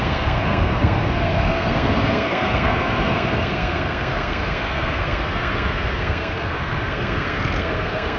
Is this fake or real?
fake